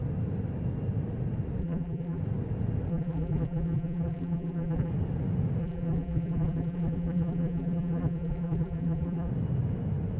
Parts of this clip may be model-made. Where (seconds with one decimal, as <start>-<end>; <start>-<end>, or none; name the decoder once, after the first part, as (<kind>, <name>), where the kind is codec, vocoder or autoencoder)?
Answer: 1.6-2.2 (vocoder, BigVGAN v2); 2.9-4.9; 5.6-9.3